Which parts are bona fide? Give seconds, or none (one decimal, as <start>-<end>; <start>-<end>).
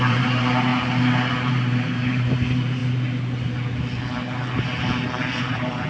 0.7-1.5; 2.8-5.4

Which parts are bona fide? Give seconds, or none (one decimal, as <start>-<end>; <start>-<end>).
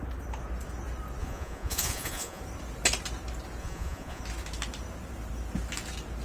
0.0-1.2; 2.4-3.6; 4.2-6.2